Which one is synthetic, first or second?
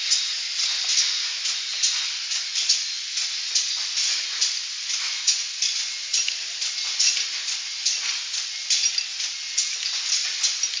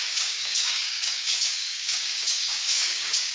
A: second